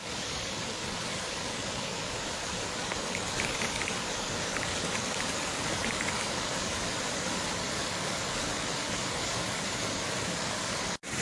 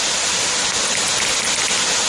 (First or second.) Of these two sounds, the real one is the second